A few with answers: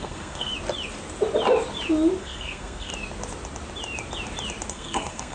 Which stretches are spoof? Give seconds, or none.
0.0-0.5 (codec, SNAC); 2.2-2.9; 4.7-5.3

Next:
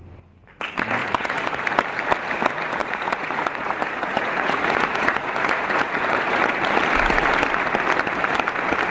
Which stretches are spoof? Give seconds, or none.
1.0-1.6 (vocoder, Vocos); 2.8-6.6

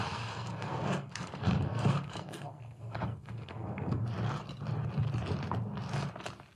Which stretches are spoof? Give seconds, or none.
0.0-4.0 (codec, SNAC)